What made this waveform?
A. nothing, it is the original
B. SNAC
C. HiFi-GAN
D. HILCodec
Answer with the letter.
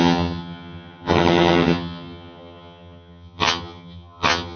C